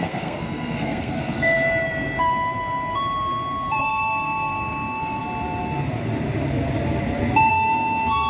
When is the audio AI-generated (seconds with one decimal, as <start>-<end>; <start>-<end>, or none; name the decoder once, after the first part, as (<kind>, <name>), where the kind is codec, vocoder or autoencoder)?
0.0-1.2 (codec, SNAC); 3.8-5.2; 7.5-8.3